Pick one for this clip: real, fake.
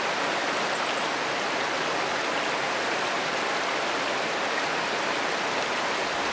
real